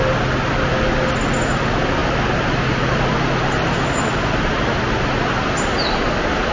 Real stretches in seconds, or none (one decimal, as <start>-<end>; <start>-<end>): 0.0-6.5

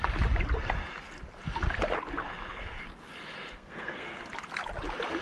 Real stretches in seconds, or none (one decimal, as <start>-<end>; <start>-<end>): 0.0-3.5; 4.2-5.2

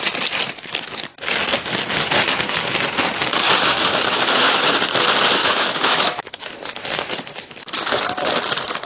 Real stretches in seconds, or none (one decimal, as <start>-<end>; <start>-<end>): 0.0-5.4; 6.5-8.8

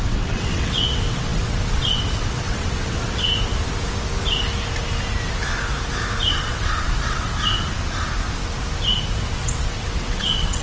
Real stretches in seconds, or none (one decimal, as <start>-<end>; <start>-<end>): 3.3-6.3; 7.3-9.2

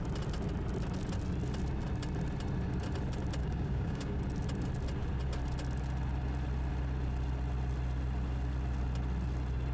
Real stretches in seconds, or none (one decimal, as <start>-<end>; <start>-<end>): 0.0-3.4; 4.2-9.7

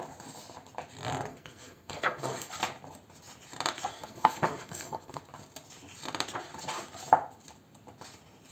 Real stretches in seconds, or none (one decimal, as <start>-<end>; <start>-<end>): 0.0-1.3; 2.5-3.9; 5.2-8.5

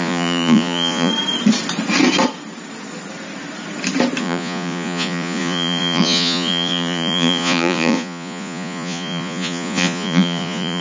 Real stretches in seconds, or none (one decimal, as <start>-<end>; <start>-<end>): 1.1-4.2